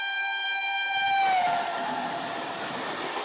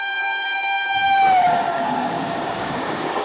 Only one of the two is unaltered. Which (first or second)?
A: first